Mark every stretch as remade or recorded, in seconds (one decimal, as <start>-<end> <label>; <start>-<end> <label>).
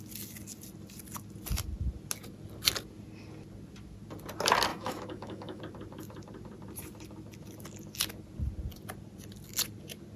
0.0-4.7 recorded; 4.7-5.6 remade; 5.6-10.2 recorded